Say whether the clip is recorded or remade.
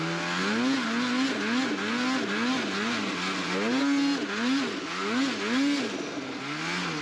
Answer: recorded